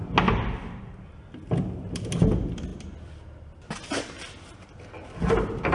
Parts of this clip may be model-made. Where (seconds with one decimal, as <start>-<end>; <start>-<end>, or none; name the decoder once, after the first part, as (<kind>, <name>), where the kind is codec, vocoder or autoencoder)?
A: none